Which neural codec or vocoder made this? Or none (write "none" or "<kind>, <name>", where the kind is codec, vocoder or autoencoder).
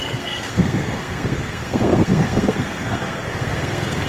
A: codec, SNAC